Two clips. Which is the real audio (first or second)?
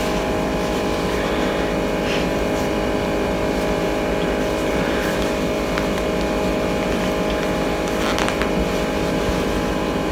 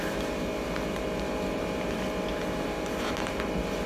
first